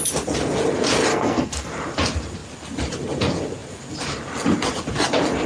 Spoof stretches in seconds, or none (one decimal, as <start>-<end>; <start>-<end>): 1.1-1.7